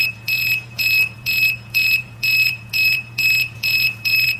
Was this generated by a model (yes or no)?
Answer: yes